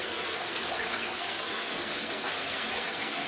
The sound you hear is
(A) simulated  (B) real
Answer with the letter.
A